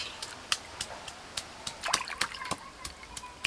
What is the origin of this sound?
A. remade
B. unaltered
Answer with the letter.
B